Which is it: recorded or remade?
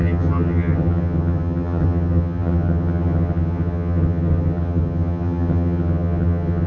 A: remade